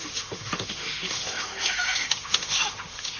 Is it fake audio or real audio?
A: fake